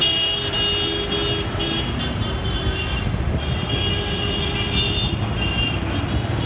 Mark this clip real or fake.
real